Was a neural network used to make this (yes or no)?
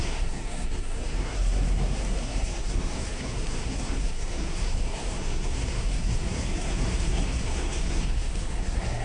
yes